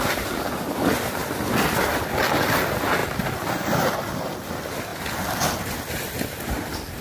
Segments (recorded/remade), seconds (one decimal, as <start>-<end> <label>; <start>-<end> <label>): 0.0-1.2 recorded; 1.2-2.1 remade; 2.1-3.0 recorded; 3.0-4.5 remade; 4.5-4.9 recorded; 4.9-5.4 remade; 5.4-7.0 recorded